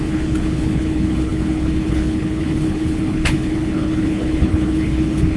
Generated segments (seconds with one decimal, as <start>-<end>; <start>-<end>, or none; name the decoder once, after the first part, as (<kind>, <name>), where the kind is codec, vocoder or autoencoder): 0.0-5.4 (codec, HILCodec)